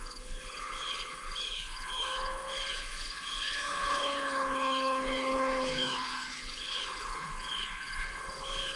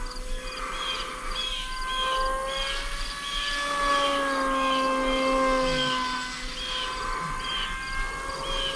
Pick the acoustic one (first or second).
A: second